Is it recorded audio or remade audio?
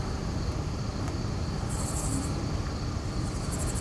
recorded